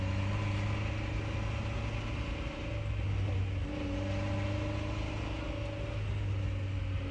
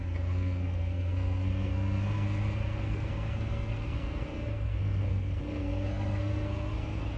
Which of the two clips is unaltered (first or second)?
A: first